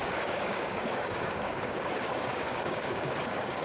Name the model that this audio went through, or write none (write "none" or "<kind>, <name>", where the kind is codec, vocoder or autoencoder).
codec, DAC